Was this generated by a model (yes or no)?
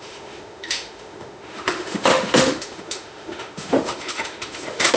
yes